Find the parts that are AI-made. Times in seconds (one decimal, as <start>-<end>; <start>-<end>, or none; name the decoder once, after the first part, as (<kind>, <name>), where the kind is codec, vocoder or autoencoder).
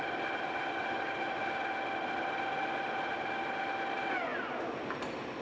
none